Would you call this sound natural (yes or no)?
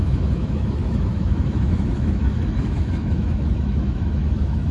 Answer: no